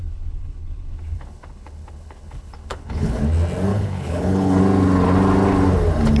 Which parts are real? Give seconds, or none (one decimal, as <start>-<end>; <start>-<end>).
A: 3.2-3.7; 4.6-6.2